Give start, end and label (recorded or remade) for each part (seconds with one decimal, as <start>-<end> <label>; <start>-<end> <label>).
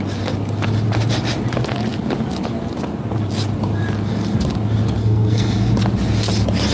0.0-5.0 recorded; 5.0-5.7 remade; 5.7-6.7 recorded